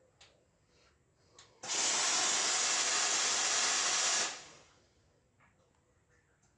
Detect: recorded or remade recorded